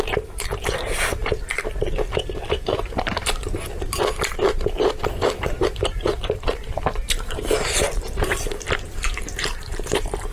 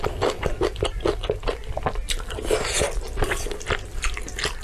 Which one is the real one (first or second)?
second